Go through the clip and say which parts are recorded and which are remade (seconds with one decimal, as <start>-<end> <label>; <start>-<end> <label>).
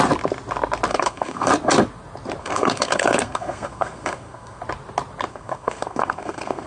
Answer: 0.0-0.9 recorded; 0.9-1.5 remade; 1.5-2.4 recorded; 2.4-4.6 remade; 4.6-5.3 recorded; 5.3-6.7 remade